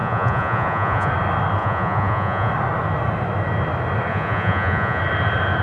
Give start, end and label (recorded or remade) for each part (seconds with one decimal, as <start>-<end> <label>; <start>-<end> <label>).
0.0-1.1 remade; 1.1-1.6 recorded; 1.6-2.5 remade; 2.5-4.1 recorded; 4.1-5.0 remade; 5.0-5.6 recorded

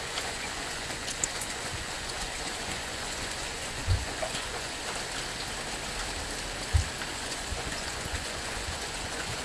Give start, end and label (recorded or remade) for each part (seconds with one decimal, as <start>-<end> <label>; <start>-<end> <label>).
0.0-4.8 remade; 4.8-7.1 recorded; 7.1-9.4 remade

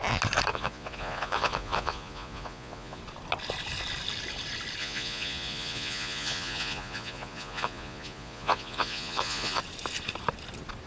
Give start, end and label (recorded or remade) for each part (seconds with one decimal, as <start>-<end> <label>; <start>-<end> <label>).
0.0-0.5 recorded; 0.5-3.0 remade; 3.0-4.8 recorded; 4.8-9.6 remade; 9.6-10.9 recorded

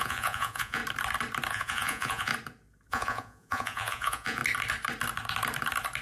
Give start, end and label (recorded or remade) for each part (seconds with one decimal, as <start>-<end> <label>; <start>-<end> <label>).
0.0-0.8 remade; 0.8-1.5 recorded; 1.5-2.3 remade; 2.3-2.9 recorded; 2.9-4.4 remade; 4.4-6.0 recorded

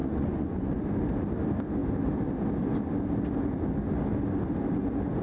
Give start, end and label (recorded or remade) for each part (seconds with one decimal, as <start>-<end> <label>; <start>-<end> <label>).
0.0-0.8 remade; 0.8-5.2 recorded

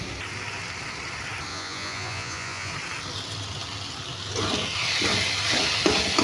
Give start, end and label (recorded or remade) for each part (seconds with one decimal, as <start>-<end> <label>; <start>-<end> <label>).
0.0-1.5 recorded; 1.5-2.7 remade; 2.7-6.2 recorded